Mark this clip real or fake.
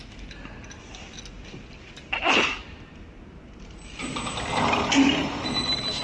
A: real